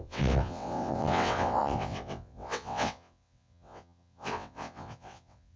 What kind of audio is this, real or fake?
fake